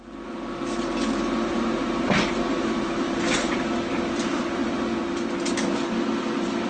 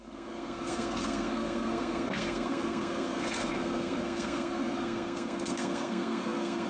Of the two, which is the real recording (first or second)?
first